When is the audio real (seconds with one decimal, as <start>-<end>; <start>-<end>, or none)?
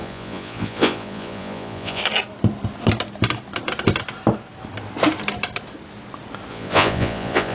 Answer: 2.0-6.5